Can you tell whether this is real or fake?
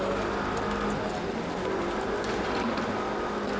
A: real